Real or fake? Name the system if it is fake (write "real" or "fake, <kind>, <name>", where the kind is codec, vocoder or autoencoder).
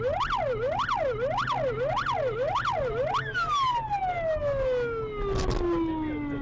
real